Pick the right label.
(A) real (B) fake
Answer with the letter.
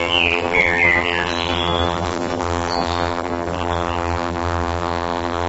B